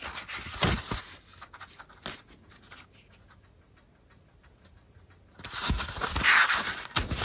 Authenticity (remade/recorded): recorded